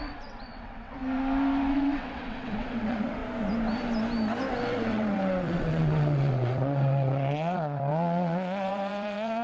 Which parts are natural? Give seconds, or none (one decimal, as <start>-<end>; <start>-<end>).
1.0-1.7; 3.2-4.5